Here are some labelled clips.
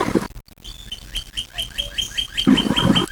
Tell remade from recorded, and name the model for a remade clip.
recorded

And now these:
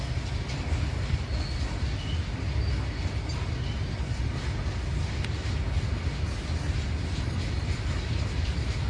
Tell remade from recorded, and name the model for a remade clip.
recorded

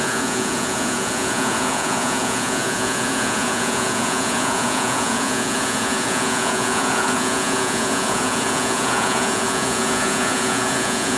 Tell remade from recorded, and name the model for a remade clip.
remade, vocoder, Vocos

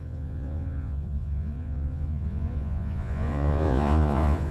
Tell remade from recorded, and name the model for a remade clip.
remade, vocoder, Vocos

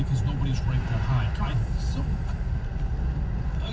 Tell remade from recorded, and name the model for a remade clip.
recorded